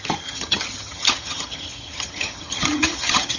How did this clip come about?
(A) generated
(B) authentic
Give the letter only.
A